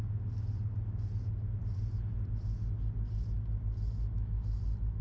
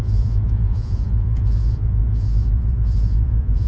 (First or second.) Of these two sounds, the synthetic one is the second